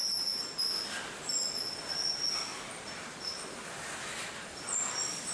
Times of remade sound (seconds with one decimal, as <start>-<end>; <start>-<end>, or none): 4.2-4.7